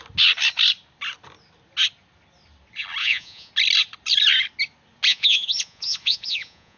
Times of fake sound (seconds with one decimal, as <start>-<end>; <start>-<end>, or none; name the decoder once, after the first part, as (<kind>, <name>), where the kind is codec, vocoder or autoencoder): 3.0-3.5 (vocoder, Vocos); 5.1-6.8